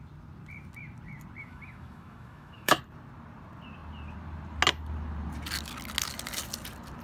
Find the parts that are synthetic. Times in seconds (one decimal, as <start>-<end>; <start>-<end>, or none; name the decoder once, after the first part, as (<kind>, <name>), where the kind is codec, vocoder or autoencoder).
1.4-2.8 (autoencoder, DAC-VAE)

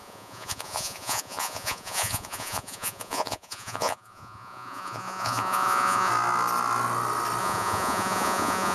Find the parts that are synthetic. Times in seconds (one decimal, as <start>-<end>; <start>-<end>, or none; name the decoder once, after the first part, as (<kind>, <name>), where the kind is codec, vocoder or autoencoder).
0.0-6.1 (vocoder, Vocos); 7.4-8.7

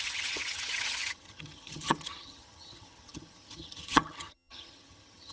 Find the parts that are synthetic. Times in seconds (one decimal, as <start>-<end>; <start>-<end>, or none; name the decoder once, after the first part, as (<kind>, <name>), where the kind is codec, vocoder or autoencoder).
0.0-5.3 (vocoder, HiFi-GAN)